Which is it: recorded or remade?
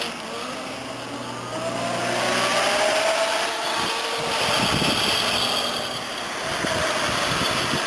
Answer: recorded